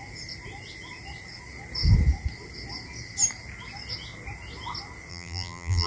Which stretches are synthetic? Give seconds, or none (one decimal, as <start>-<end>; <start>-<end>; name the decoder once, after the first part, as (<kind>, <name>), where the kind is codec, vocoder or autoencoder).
5.1-5.9 (vocoder, BigVGAN v2)